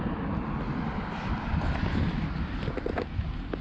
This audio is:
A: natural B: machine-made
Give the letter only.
B